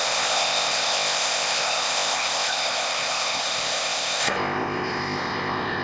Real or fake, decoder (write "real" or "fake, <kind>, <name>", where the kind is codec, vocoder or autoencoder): fake, codec, ZipCodec